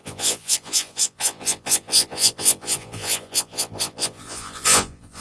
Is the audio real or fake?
fake